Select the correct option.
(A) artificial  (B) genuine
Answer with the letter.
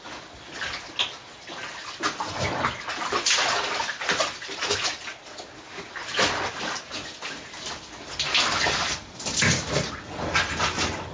B